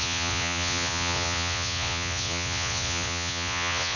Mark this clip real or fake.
fake